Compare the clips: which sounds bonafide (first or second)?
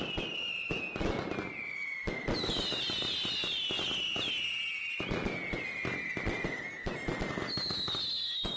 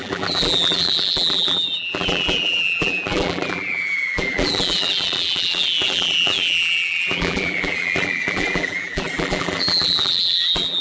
first